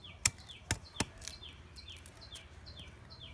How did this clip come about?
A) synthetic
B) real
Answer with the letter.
B